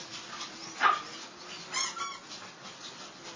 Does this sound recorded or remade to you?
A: remade